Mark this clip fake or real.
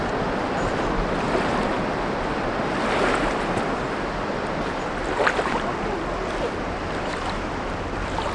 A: real